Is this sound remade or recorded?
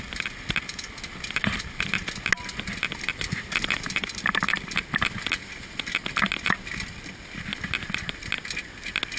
recorded